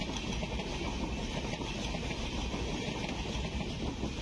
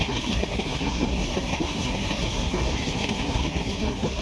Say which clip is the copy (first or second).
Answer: second